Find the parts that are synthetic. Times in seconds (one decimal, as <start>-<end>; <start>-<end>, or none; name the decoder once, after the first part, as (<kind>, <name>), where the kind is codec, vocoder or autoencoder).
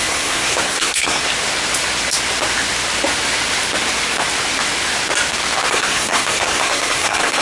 0.0-1.3 (codec, SNAC); 5.7-7.4